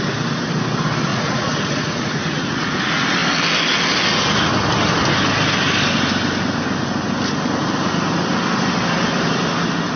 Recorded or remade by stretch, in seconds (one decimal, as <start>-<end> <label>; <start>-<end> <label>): 0.0-1.1 recorded; 1.1-2.8 remade; 2.8-10.0 recorded